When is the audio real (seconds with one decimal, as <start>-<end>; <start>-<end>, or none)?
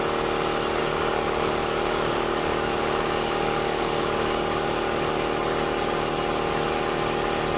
0.0-0.8; 5.1-7.6